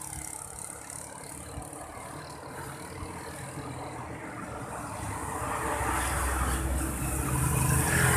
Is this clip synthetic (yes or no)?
no